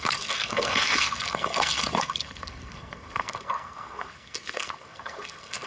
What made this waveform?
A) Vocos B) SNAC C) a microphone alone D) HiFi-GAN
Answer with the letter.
B